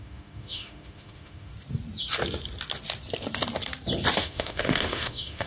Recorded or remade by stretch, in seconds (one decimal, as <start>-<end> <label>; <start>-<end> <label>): 0.0-1.5 remade; 1.5-4.2 recorded; 4.2-5.5 remade